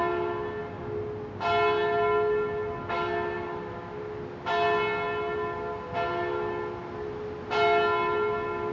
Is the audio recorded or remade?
recorded